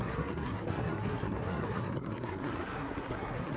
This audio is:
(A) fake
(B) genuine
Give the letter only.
A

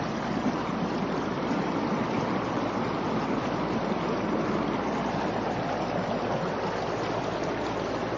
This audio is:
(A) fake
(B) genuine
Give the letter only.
B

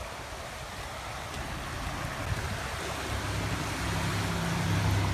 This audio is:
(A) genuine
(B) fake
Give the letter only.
A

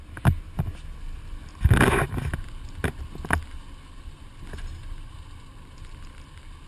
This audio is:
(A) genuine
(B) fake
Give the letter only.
A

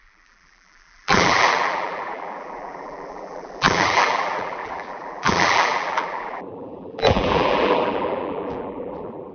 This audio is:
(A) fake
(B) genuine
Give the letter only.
A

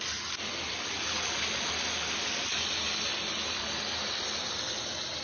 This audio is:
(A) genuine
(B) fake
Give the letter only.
A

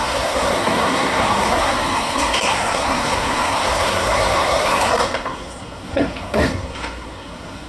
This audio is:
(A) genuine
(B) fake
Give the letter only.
B